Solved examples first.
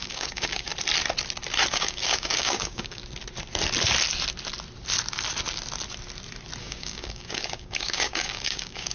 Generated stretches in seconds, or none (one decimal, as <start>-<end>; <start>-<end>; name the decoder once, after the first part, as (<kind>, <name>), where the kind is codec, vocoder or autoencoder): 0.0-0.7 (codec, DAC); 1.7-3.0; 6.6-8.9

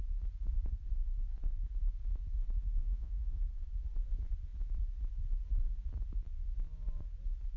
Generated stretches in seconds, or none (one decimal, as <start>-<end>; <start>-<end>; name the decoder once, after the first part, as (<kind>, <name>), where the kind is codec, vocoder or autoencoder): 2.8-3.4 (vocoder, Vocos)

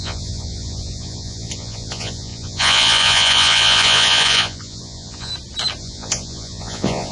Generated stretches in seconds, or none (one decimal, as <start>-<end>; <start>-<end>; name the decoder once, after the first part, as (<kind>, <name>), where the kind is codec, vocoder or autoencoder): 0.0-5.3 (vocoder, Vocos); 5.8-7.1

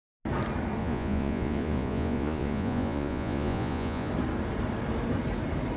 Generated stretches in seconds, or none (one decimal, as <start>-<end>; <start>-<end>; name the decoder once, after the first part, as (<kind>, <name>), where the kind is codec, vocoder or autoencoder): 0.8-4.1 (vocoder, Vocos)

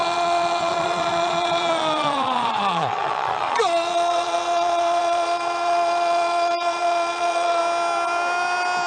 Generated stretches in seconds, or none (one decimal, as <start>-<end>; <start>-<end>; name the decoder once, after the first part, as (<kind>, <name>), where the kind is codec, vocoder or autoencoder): 0.0-7.6 (vocoder, Vocos)